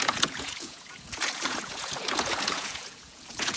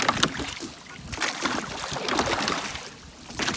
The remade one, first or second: first